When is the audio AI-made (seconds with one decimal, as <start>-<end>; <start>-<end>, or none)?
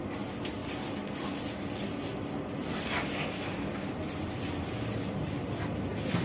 0.0-6.2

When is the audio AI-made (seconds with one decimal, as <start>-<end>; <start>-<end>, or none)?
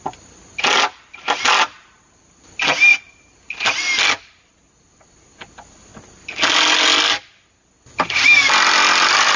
none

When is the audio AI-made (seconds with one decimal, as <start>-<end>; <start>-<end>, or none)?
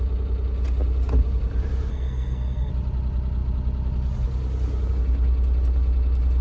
1.9-2.7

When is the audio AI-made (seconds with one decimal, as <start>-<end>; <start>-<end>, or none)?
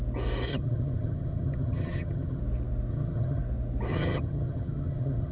0.5-2.4; 2.9-3.4; 3.9-5.3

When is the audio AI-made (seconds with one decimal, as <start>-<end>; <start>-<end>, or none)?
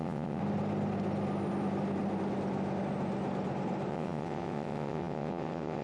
0.0-0.4; 3.9-5.8